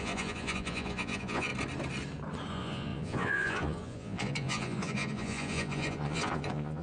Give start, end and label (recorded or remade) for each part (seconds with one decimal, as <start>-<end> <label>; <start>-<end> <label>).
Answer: 0.0-1.5 remade; 1.5-2.5 recorded; 2.5-6.8 remade